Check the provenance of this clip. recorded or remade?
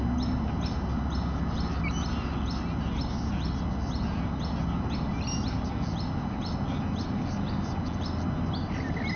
recorded